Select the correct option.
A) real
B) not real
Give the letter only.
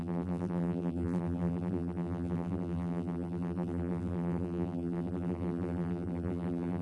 B